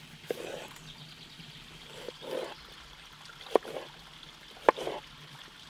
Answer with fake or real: real